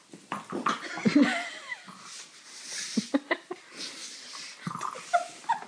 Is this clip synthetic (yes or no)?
no